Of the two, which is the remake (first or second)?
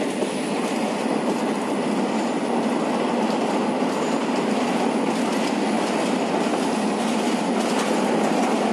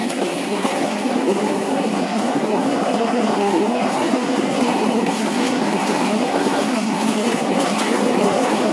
second